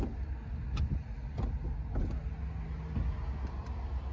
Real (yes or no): yes